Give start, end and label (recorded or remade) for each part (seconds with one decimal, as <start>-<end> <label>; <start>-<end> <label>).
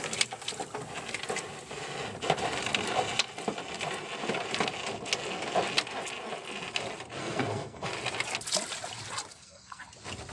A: 0.0-7.2 recorded; 7.2-7.9 remade; 7.9-9.3 recorded; 9.3-9.8 remade; 9.8-10.3 recorded